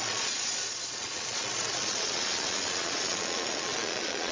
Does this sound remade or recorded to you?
remade